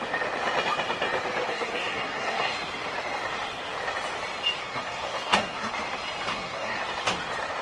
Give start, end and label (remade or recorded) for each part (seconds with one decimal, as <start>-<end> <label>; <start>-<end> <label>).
0.0-1.5 recorded; 1.5-2.5 remade; 2.5-4.6 recorded; 4.6-5.7 remade; 5.7-6.3 recorded; 6.3-6.8 remade; 6.8-7.6 recorded